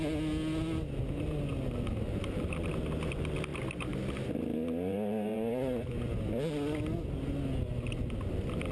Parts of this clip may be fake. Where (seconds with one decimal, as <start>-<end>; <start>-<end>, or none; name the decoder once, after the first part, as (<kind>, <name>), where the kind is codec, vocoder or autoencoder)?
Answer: 1.5-2.7 (vocoder, BigVGAN v2); 3.5-5.9